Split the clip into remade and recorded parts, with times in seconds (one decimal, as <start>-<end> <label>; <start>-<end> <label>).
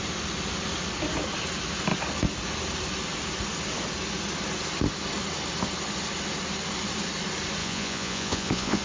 0.0-7.6 recorded; 7.6-8.8 remade